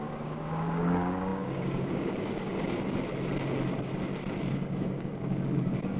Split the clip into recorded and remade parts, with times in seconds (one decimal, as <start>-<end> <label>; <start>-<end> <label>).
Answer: 0.0-2.5 remade; 2.5-4.5 recorded; 4.5-6.0 remade